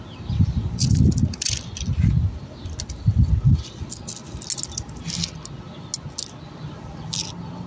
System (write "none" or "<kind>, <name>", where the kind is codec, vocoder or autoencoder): none